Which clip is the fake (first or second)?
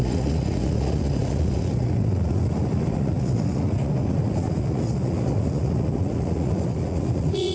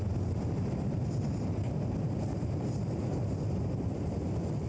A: first